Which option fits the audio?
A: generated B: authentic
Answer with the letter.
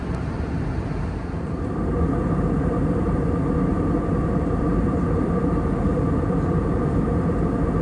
A